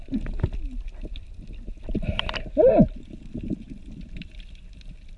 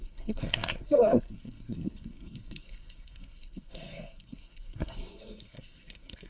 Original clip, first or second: first